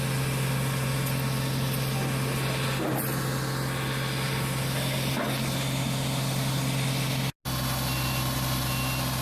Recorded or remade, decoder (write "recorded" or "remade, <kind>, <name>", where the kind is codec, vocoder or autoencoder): recorded